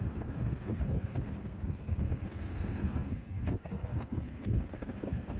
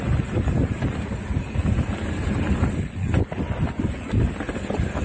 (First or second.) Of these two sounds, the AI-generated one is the first